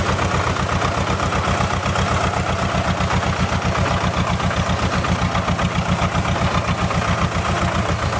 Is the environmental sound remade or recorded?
recorded